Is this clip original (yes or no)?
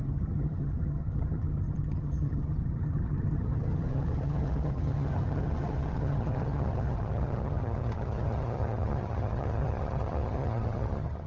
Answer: no